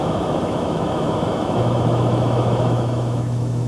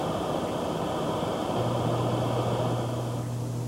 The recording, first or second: second